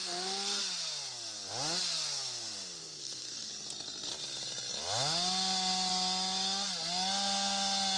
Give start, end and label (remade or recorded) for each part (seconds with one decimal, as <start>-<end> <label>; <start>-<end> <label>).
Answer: 0.0-0.6 remade; 0.6-2.8 recorded; 2.8-3.5 remade; 3.5-8.0 recorded